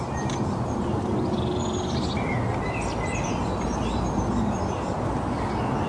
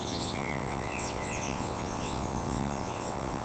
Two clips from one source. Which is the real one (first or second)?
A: first